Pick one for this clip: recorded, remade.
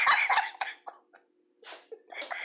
recorded